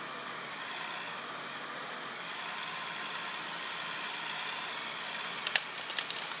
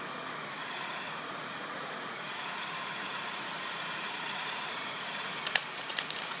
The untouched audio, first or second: first